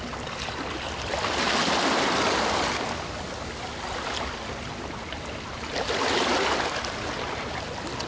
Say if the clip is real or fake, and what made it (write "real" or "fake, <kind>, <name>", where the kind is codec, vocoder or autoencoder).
real